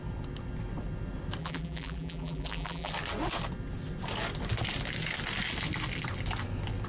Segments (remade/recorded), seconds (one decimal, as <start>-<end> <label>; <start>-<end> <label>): 0.0-1.4 recorded; 1.4-2.9 remade; 2.9-6.9 recorded